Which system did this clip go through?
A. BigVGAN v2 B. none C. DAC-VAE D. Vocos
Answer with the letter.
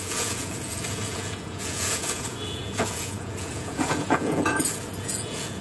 D